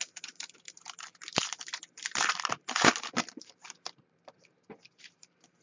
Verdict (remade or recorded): remade